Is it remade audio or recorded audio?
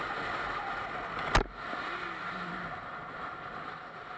recorded